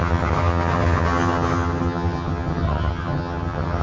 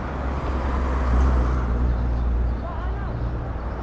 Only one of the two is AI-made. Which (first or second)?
first